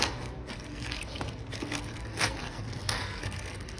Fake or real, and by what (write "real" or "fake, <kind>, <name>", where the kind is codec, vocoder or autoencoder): fake, codec, SNAC